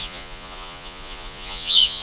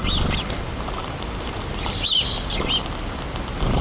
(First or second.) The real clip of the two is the second